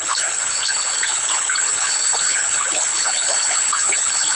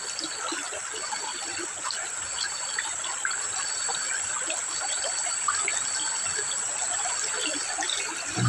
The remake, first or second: first